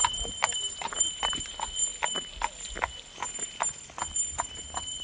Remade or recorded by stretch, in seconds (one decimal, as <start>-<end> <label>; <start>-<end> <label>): 0.0-1.4 remade; 1.4-5.0 recorded